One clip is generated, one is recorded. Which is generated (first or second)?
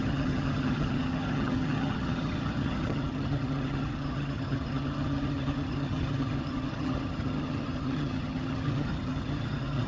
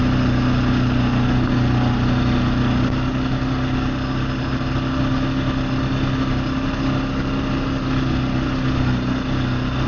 first